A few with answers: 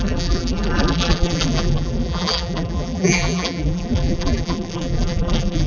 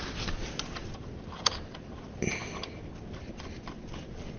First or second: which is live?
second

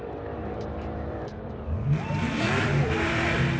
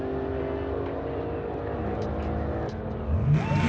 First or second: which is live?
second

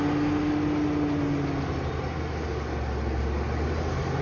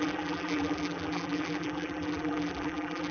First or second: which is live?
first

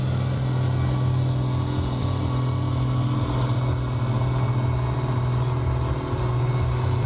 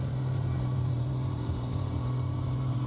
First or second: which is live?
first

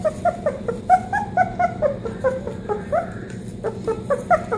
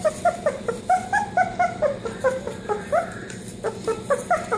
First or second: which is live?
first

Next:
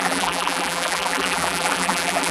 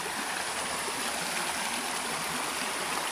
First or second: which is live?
second